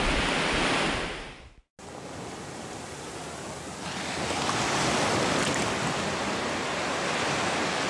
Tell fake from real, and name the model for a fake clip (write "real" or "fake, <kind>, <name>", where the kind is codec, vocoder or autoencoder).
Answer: real